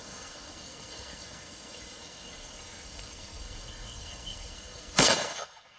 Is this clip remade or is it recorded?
remade